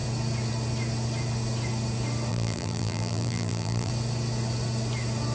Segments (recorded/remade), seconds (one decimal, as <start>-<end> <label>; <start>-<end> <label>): 0.0-2.3 recorded; 2.3-3.9 remade; 3.9-5.3 recorded